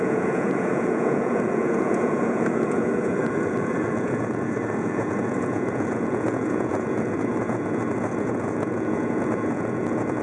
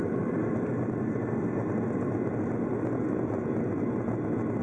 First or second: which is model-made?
first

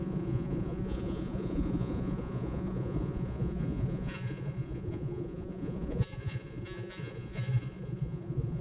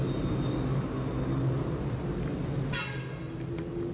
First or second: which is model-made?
first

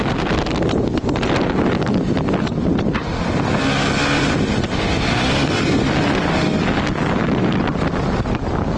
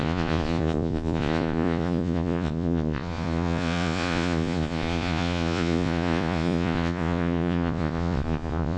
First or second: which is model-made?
second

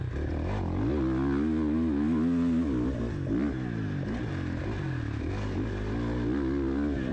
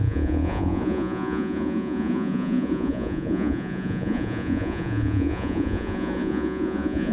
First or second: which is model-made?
second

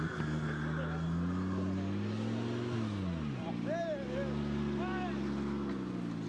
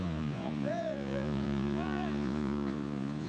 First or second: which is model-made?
second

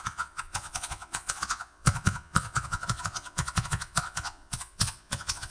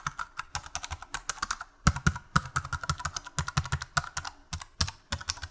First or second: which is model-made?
first